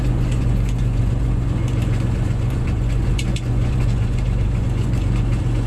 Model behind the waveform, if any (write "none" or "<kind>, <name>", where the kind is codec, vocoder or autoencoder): vocoder, Vocos